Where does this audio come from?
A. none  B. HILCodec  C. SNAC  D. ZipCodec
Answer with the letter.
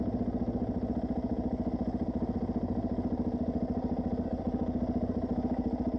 A